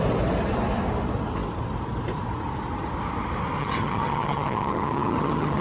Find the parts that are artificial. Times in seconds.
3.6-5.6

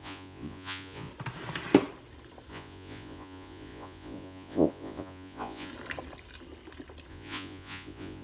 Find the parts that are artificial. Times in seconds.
0.0-1.1; 2.5-5.7; 7.1-8.2